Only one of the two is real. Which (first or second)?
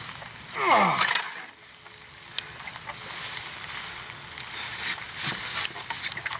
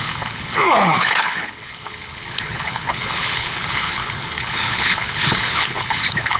first